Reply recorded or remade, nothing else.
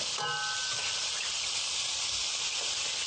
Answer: recorded